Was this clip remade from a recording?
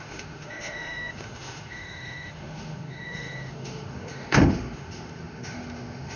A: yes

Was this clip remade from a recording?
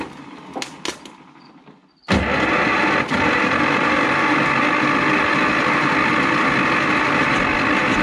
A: no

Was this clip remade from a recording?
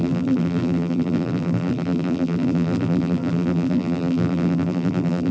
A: yes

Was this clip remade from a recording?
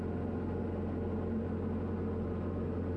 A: no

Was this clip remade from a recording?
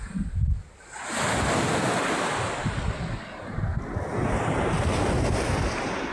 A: no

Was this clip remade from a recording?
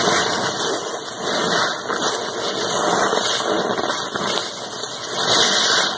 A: no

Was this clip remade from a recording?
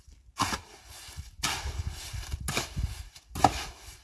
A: yes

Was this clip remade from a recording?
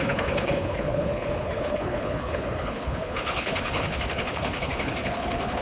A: yes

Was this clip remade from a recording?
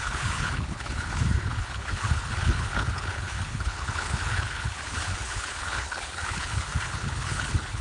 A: yes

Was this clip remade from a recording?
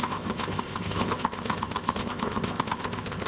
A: yes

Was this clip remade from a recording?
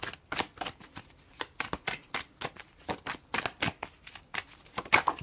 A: no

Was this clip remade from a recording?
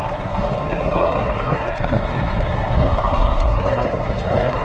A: yes